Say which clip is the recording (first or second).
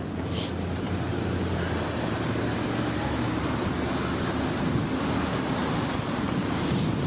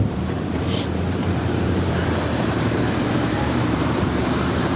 first